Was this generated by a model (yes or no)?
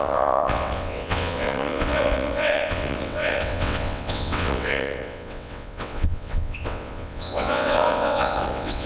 yes